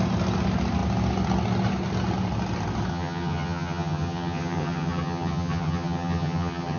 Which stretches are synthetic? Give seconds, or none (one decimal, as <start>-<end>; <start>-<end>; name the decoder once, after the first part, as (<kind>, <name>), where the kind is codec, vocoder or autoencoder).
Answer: 2.9-6.8 (vocoder, HiFi-GAN)